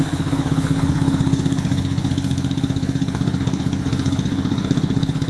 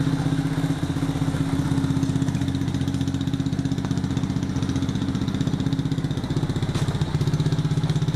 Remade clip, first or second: first